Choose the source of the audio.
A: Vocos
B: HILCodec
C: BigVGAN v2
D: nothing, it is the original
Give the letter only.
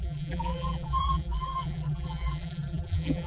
C